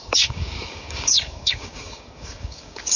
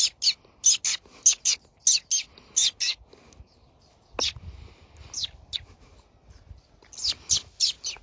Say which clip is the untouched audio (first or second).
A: second